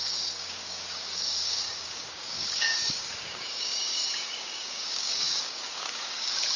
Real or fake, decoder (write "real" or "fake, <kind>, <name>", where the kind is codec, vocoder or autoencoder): fake, codec, DAC